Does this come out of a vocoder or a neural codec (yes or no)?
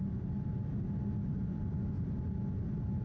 no